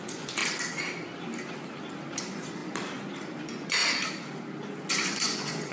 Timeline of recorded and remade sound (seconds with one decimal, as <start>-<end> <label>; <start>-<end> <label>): 0.0-0.4 remade; 0.4-2.2 recorded; 2.2-2.6 remade; 2.6-3.4 recorded; 3.4-3.8 remade; 3.8-4.9 recorded; 4.9-5.7 remade